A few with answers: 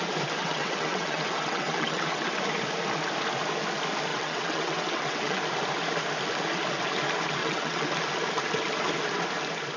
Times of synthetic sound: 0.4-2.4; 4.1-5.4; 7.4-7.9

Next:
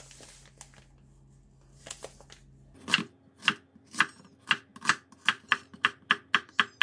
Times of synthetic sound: none

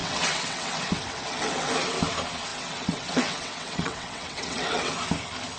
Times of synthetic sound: 0.0-1.7; 2.5-4.9

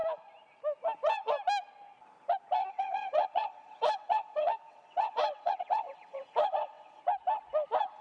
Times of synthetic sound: 2.6-7.0

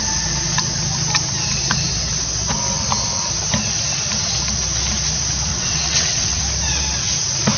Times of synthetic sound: 5.5-6.4

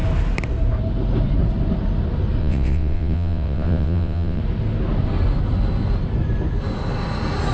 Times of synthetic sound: 2.4-4.4